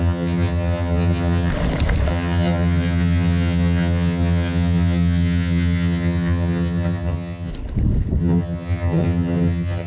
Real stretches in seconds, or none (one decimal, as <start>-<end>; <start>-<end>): 1.5-2.1; 7.5-8.2